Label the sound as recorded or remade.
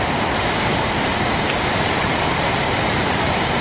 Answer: remade